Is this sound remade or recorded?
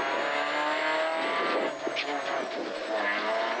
recorded